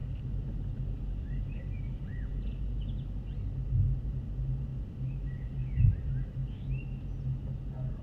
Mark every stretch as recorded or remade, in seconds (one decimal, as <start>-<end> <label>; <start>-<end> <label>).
0.0-2.3 remade; 2.3-3.7 recorded; 3.7-6.4 remade; 6.4-7.4 recorded; 7.4-8.0 remade